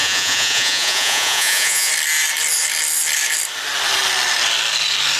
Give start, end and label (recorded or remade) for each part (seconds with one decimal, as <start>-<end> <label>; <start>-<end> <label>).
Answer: 0.0-1.9 remade; 1.9-5.2 recorded